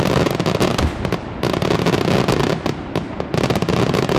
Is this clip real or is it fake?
real